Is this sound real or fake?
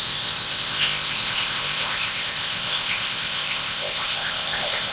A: fake